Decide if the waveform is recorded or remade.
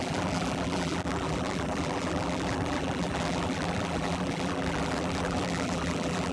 remade